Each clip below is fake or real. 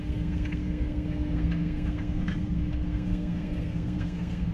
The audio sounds fake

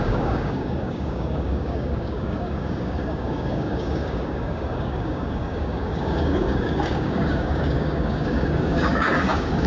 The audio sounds fake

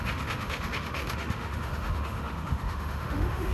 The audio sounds fake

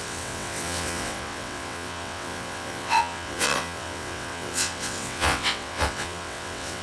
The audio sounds fake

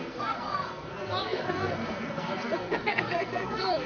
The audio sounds fake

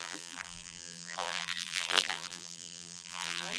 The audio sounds fake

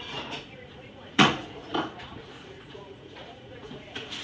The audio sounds fake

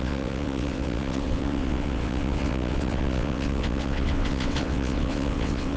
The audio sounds fake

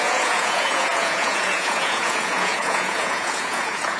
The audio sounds fake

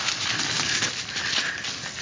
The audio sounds real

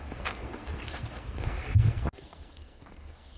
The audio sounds fake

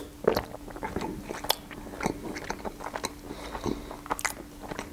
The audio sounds real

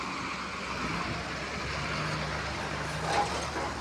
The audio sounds real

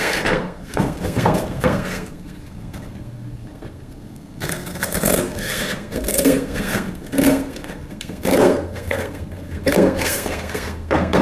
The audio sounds fake